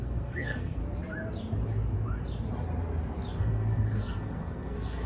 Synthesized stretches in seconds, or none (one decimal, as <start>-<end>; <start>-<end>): 0.0-0.8; 3.4-5.1